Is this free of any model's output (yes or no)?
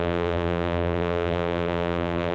no